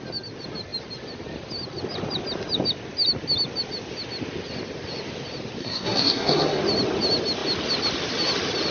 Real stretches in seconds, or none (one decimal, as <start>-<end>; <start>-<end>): 0.0-5.6; 6.6-8.7